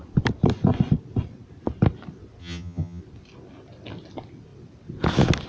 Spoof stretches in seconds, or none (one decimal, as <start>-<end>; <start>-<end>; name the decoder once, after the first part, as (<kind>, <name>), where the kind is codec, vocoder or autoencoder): 2.4-3.0 (vocoder, HiFi-GAN)